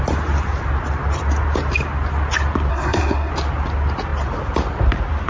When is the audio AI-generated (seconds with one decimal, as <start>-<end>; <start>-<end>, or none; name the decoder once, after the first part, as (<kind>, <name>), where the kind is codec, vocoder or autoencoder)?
2.7-3.3 (codec, SNAC)